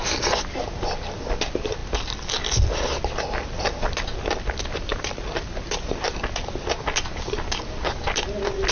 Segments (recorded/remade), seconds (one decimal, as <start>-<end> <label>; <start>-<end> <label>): 0.0-4.9 recorded; 4.9-6.1 remade; 6.1-8.7 recorded